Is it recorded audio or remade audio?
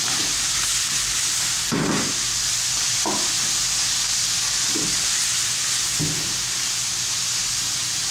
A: remade